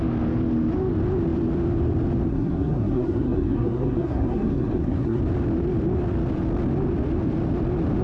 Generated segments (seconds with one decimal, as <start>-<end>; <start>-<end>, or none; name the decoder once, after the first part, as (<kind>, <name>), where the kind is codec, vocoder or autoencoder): 2.3-5.2 (codec, SNAC)